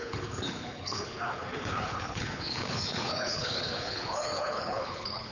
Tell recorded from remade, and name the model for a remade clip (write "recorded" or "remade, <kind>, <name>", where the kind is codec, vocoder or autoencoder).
remade, codec, HILCodec